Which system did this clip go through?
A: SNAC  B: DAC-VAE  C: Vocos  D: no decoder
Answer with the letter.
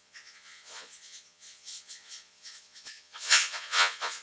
C